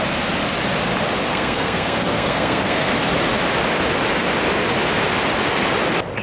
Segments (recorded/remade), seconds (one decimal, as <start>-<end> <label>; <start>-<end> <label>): 0.0-1.3 recorded; 1.3-2.9 remade; 2.9-6.2 recorded